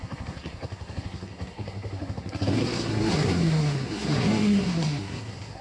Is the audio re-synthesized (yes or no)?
yes